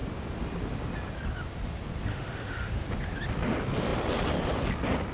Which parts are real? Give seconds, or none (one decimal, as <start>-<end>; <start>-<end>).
0.0-2.1; 2.8-5.1